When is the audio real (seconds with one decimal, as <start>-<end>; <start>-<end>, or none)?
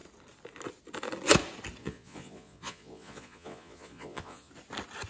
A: 0.0-1.8; 4.5-5.1